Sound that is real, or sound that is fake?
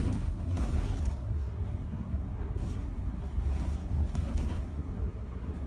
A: fake